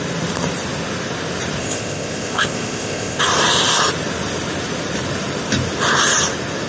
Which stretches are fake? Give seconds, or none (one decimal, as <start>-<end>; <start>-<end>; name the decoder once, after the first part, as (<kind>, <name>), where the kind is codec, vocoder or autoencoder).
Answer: 1.6-3.2 (codec, ZipCodec)